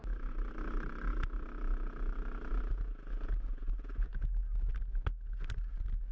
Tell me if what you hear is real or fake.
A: real